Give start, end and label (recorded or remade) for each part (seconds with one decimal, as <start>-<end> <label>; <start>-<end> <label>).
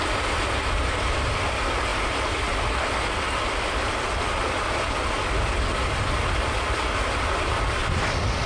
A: 0.0-8.5 recorded